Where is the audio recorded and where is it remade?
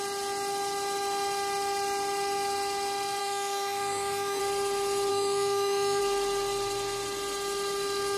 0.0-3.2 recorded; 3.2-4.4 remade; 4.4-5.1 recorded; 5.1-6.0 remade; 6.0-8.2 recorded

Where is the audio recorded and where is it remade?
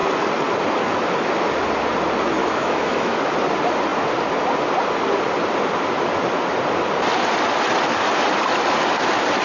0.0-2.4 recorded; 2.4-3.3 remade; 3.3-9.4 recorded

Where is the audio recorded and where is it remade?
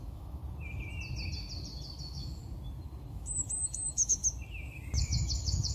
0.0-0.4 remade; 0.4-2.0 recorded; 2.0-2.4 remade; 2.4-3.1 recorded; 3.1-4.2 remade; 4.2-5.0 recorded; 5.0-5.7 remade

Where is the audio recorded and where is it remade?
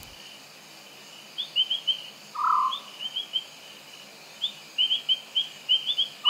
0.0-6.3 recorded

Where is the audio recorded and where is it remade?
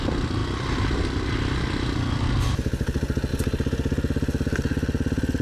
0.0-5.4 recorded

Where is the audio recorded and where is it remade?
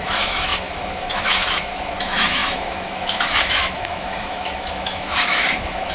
0.0-5.9 remade